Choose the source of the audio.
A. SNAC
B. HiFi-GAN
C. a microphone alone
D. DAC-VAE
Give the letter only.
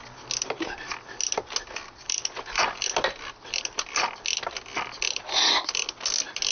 C